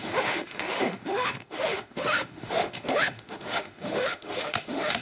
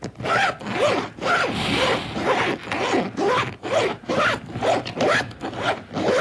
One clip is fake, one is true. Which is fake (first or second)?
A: first